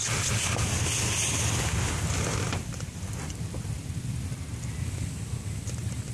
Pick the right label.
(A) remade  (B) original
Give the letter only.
B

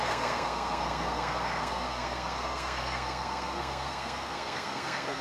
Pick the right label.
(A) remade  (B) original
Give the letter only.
A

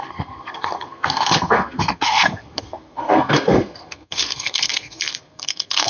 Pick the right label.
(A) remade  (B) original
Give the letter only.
A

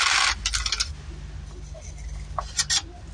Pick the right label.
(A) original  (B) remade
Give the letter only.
A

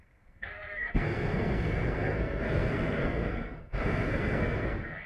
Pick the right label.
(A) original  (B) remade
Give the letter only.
B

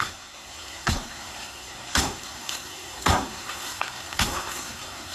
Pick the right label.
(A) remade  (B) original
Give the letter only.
A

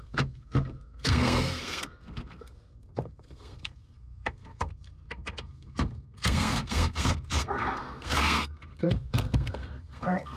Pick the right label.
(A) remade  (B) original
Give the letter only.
A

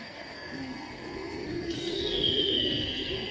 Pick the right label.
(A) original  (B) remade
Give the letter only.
B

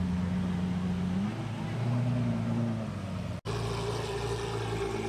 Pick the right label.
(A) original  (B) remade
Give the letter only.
A